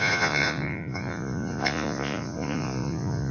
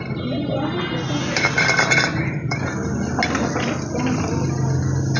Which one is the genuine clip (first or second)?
second